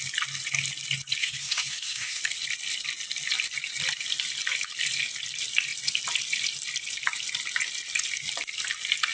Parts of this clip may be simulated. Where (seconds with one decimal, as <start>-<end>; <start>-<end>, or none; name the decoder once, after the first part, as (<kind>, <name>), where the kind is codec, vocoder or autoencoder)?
1.2-2.2 (codec, SNAC)